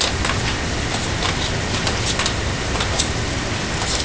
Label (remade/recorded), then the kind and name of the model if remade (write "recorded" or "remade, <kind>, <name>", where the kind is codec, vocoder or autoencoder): recorded